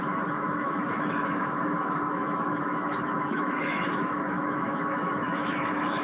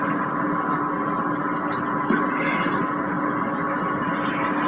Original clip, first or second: second